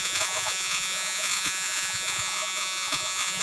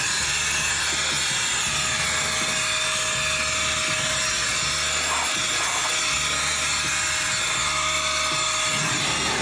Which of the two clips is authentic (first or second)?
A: second